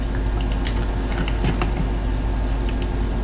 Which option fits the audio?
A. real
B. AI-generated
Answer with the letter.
A